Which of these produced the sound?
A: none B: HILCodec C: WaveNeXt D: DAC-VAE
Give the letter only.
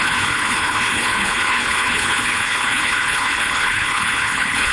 B